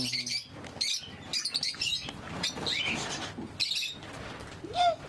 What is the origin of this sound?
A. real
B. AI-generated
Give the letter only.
A